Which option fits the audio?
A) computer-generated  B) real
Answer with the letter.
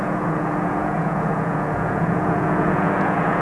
A